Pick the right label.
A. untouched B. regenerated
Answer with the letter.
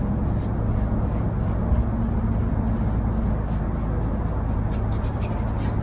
A